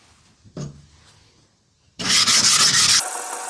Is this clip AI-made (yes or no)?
no